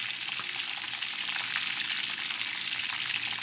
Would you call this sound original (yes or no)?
yes